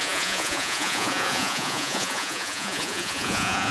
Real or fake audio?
fake